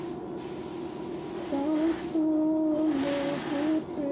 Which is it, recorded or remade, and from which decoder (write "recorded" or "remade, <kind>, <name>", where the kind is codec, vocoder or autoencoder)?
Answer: recorded